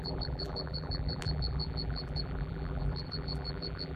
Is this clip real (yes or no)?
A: no